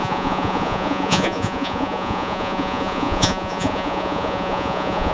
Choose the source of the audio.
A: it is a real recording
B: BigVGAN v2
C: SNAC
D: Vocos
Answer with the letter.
D